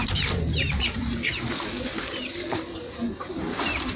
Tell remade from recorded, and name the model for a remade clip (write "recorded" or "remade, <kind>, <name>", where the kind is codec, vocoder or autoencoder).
remade, vocoder, BigVGAN v2